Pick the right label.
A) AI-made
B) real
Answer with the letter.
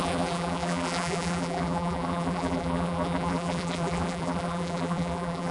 A